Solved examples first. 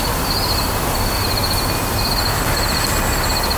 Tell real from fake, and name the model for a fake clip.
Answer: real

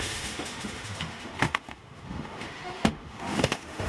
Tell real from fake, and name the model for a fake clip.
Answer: fake, autoencoder, DAC-VAE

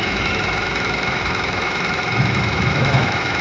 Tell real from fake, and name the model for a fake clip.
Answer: fake, autoencoder, DAC-VAE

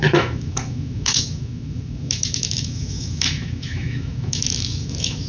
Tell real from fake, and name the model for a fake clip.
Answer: fake, autoencoder, DAC-VAE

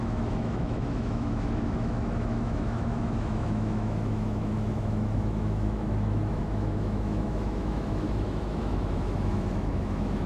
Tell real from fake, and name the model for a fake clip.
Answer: fake, autoencoder, DAC-VAE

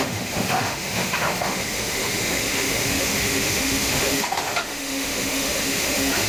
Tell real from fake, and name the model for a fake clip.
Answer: fake, autoencoder, DAC-VAE